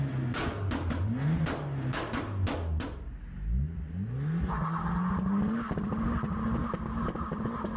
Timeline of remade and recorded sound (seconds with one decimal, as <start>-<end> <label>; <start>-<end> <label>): 0.0-7.8 recorded